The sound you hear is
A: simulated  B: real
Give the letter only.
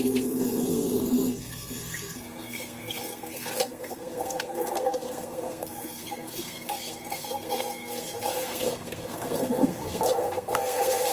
A